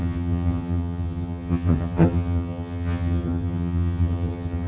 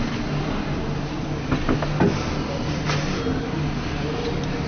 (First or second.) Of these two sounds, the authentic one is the second